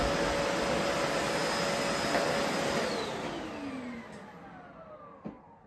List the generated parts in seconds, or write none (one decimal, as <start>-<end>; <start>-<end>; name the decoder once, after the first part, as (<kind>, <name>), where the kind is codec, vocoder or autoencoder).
none